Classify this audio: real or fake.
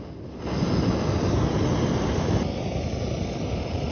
real